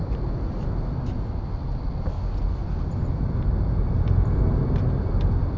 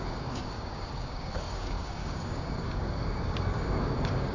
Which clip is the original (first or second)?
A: first